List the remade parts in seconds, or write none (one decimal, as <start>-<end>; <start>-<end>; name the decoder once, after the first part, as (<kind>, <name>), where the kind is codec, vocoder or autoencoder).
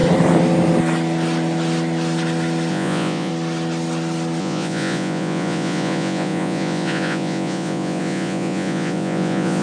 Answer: 2.7-3.3 (vocoder, Vocos); 4.4-9.6